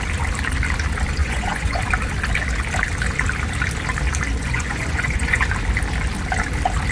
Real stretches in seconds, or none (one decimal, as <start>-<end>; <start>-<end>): 0.0-1.2; 1.8-4.4; 5.5-6.9